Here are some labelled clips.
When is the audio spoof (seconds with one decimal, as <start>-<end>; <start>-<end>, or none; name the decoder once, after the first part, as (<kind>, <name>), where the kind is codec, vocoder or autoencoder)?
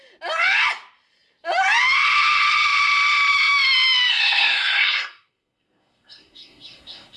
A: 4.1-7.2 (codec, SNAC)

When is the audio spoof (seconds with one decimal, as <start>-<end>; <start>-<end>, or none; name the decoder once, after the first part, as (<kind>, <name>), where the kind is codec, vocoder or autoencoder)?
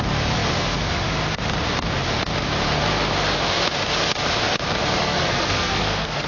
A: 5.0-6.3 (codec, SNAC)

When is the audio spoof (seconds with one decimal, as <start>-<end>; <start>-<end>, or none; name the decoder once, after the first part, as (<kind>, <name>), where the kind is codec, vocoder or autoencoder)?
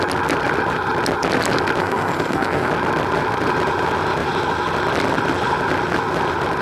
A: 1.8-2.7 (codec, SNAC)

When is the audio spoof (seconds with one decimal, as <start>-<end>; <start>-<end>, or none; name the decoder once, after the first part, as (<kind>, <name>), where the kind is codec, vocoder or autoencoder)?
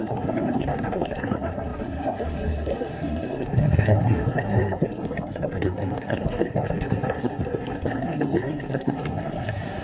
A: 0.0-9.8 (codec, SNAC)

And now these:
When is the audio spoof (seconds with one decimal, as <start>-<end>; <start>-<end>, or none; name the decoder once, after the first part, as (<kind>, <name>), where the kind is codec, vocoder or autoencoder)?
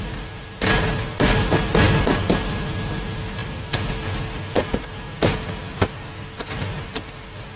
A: none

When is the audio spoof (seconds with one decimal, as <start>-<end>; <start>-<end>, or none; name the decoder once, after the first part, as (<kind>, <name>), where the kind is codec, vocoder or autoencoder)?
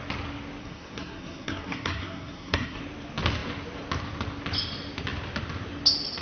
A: 0.6-2.8 (codec, SNAC)